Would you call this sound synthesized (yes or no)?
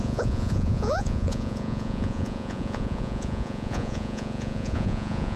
yes